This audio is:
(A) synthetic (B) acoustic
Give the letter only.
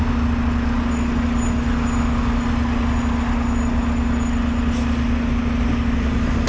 B